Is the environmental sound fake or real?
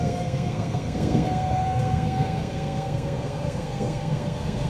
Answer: fake